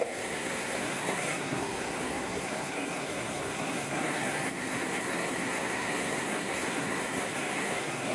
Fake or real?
fake